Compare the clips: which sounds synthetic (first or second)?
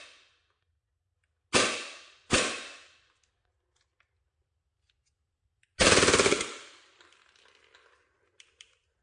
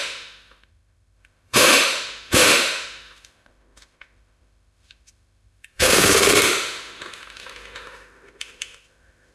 second